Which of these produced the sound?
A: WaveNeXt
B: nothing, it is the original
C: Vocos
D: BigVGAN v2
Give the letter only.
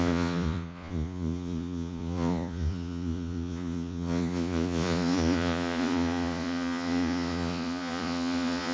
C